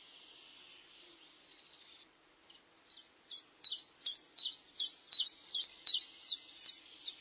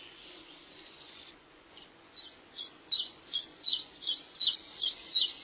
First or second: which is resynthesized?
second